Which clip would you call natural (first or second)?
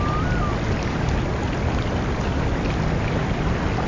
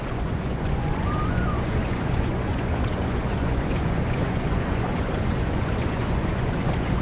first